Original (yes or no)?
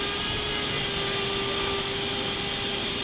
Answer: yes